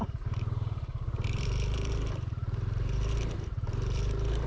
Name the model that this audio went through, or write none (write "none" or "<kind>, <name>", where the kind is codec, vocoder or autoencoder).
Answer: vocoder, BigVGAN v2